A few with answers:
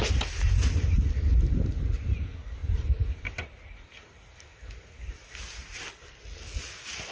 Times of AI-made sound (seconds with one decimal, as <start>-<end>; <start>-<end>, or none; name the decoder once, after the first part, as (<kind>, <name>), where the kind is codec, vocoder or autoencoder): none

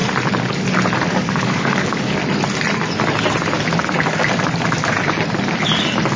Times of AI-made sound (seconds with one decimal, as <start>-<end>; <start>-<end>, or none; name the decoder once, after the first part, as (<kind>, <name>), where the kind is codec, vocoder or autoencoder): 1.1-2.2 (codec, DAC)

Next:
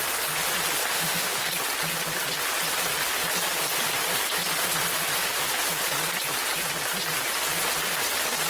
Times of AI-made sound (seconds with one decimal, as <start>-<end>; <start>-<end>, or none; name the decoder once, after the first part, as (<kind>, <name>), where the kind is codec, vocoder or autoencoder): 0.9-1.5 (autoencoder, DAC-VAE)

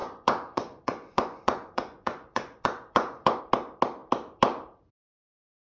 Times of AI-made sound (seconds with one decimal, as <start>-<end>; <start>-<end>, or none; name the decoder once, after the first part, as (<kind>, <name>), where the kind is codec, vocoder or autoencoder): 0.0-3.4 (vocoder, Vocos)

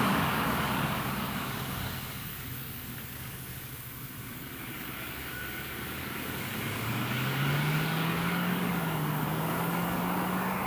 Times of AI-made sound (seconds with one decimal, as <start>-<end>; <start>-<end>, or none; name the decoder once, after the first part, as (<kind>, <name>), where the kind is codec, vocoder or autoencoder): 0.0-10.7 (codec, DAC)

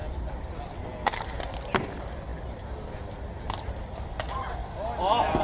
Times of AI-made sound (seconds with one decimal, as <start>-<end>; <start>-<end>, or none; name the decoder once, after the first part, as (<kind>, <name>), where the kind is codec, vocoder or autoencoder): none

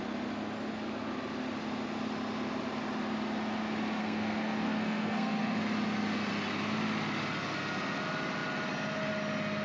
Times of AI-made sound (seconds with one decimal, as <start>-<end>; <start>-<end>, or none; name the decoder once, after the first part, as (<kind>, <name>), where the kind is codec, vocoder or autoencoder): 4.0-5.6 (codec, SNAC)